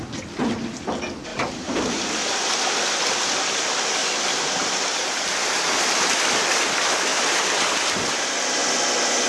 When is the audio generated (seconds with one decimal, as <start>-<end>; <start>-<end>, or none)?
1.3-1.9; 4.0-6.2; 7.1-8.6